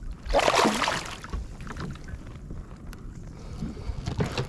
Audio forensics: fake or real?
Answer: real